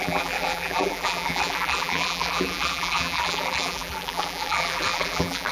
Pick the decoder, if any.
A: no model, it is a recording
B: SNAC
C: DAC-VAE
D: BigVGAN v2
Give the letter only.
D